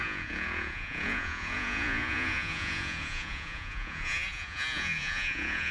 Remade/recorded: remade